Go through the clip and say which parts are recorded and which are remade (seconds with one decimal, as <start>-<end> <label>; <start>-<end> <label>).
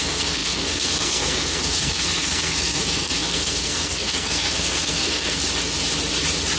0.0-5.4 remade; 5.4-6.6 recorded